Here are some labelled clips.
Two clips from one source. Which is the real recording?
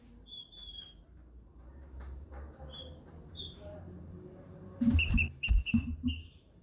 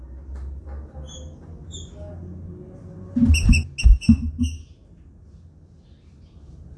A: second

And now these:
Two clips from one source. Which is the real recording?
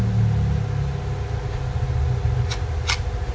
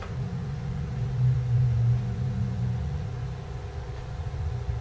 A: first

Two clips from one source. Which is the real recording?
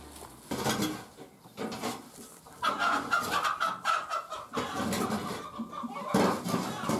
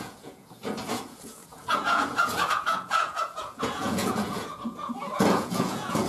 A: first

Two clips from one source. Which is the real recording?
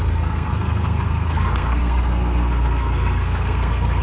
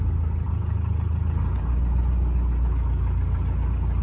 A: second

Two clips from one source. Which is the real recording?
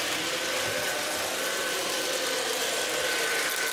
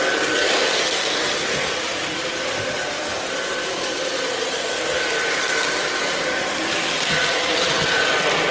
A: first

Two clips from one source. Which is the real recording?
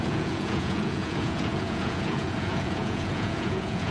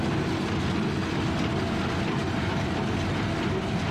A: second